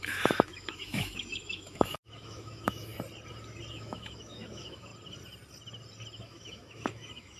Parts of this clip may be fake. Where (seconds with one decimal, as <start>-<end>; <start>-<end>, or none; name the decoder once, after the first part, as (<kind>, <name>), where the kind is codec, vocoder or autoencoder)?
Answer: 0.0-2.9 (autoencoder, DAC-VAE); 3.7-4.9; 6.2-7.4